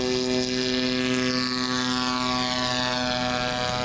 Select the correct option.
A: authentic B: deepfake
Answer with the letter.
A